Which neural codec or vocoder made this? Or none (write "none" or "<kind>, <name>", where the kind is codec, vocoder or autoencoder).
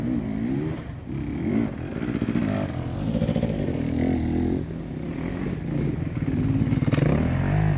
none